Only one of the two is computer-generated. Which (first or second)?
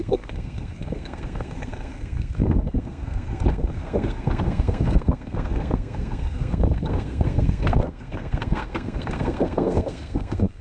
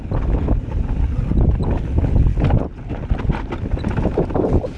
first